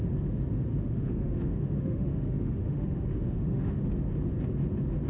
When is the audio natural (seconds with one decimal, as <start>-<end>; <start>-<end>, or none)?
0.0-0.7; 3.8-5.1